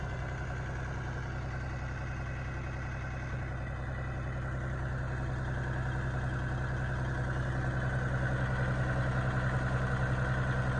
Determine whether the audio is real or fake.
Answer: real